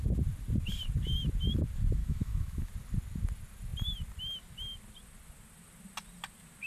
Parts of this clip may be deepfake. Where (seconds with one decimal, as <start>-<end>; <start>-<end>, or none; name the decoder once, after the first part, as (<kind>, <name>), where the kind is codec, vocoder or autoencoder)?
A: 2.0-2.7 (autoencoder, DAC-VAE)